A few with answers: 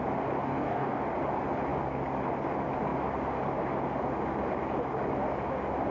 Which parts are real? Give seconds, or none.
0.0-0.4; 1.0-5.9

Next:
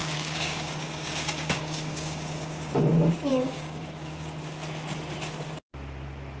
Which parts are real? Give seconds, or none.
2.7-3.3; 4.3-6.4

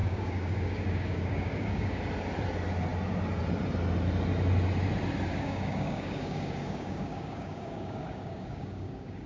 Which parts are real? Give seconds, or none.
2.0-5.3

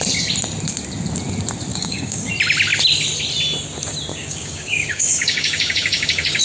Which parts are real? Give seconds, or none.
0.0-1.7; 2.3-4.1

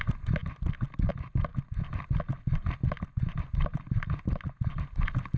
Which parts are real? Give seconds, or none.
0.0-5.4

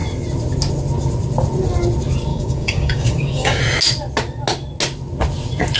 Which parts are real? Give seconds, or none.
0.0-2.3; 3.6-5.8